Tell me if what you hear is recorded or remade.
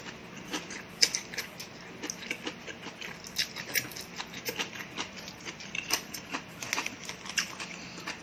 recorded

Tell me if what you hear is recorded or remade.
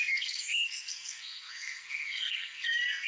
remade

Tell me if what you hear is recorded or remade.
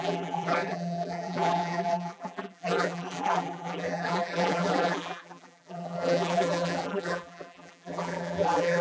remade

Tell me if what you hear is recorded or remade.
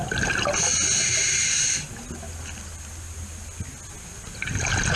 recorded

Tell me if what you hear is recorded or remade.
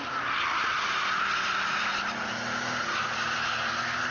recorded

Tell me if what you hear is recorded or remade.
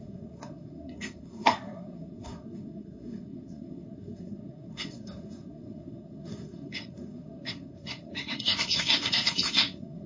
remade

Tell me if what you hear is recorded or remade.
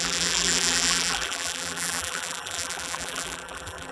remade